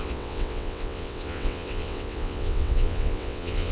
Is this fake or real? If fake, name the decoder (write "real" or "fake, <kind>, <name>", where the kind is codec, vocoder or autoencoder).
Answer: fake, vocoder, WaveNeXt